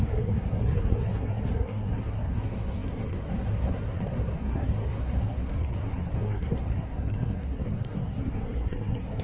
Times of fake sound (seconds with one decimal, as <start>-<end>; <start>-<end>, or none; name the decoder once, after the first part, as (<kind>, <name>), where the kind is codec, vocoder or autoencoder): 0.0-9.2 (codec, SNAC)